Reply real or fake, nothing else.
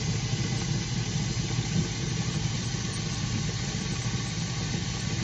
real